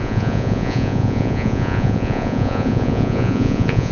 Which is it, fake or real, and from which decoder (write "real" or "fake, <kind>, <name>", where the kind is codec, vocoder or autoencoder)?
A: fake, vocoder, Vocos